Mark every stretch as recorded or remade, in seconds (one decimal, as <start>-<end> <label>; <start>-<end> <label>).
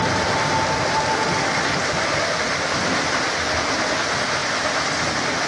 0.0-5.5 recorded